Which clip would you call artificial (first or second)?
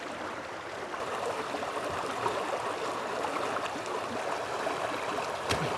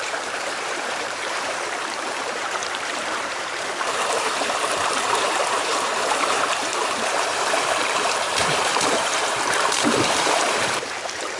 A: second